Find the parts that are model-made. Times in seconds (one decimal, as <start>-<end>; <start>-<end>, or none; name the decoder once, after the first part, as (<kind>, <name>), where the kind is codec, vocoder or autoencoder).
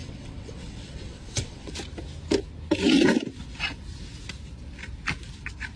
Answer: 0.0-1.7 (vocoder, WaveNeXt)